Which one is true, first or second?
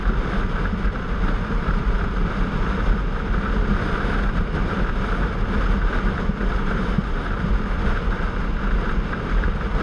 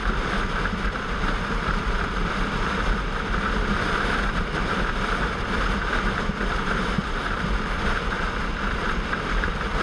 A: first